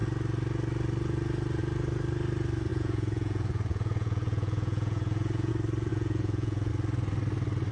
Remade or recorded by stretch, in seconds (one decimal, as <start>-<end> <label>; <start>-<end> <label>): 0.0-2.7 recorded; 2.7-5.5 remade; 5.5-5.9 recorded; 5.9-6.7 remade; 6.7-7.7 recorded